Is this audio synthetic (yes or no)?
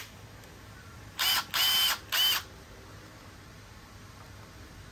no